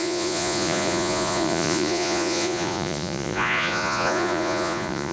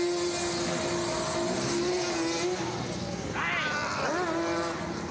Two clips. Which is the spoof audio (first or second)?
first